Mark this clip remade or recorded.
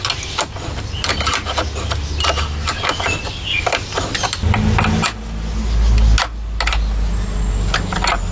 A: recorded